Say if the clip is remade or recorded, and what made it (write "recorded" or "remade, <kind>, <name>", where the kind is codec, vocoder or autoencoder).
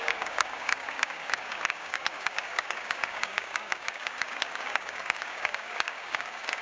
remade, codec, DAC